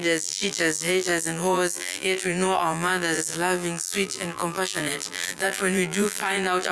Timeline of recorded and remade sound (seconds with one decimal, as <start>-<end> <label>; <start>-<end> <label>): 0.0-6.7 remade